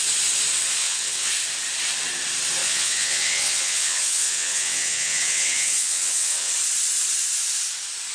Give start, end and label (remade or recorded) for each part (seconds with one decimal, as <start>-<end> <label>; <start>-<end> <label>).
0.0-0.8 recorded; 0.8-1.3 remade; 1.3-2.6 recorded; 2.6-6.5 remade; 6.5-8.1 recorded